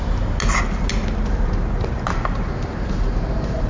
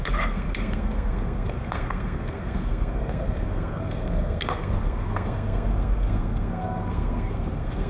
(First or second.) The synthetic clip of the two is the second